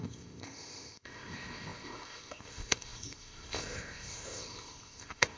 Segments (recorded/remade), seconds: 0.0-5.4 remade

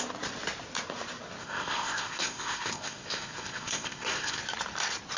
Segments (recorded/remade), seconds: 0.0-1.4 recorded; 1.4-4.4 remade; 4.4-5.2 recorded

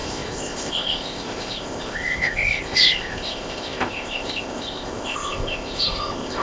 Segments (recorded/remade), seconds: 0.0-6.4 remade

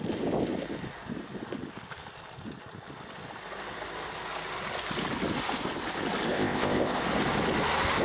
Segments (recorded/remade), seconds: 0.0-6.3 recorded; 6.3-7.0 remade; 7.0-8.0 recorded

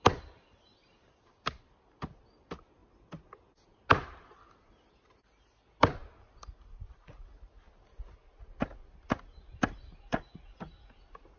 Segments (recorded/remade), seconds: 0.0-11.4 recorded

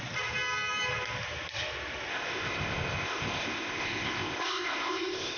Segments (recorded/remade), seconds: 0.0-2.1 recorded; 2.1-5.4 remade